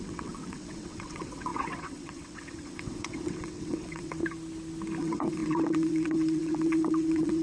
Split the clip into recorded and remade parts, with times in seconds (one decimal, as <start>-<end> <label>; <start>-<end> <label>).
0.0-4.2 remade; 4.2-5.0 recorded; 5.0-7.4 remade

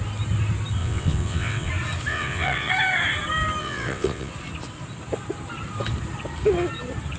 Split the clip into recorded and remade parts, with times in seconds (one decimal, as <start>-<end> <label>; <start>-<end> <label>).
0.0-0.8 recorded; 0.8-1.7 remade; 1.7-2.1 recorded; 2.1-2.7 remade; 2.7-3.6 recorded; 3.6-4.3 remade; 4.3-7.2 recorded

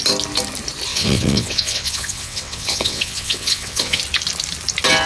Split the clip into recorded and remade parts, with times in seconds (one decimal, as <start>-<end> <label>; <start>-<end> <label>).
0.0-0.9 recorded; 0.9-4.0 remade; 4.0-5.1 recorded

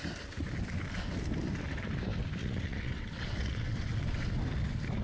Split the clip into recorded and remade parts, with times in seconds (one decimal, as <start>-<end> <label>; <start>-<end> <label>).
0.0-2.4 recorded; 2.4-4.3 remade; 4.3-5.0 recorded

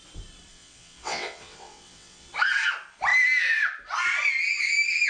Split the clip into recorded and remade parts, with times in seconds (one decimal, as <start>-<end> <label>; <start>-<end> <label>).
0.0-0.5 recorded; 0.5-2.3 remade; 2.3-5.1 recorded